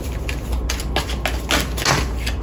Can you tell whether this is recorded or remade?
recorded